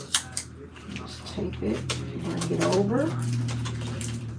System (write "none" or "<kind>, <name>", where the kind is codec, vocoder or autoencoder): vocoder, BigVGAN v2